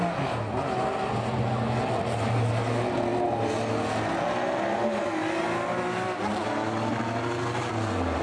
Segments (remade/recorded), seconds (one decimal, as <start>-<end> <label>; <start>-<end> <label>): 0.0-8.2 recorded